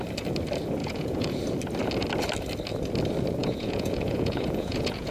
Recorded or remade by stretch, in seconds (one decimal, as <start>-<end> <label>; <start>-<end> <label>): 0.0-0.8 recorded; 0.8-1.4 remade; 1.4-3.4 recorded; 3.4-5.1 remade